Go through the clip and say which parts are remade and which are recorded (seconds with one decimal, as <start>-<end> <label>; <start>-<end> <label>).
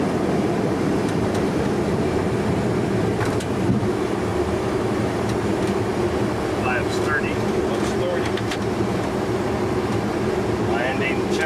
0.0-11.5 remade